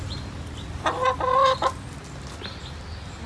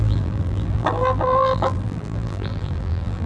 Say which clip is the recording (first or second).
first